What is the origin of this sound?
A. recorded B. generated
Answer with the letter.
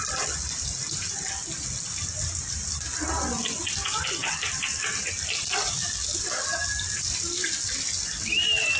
A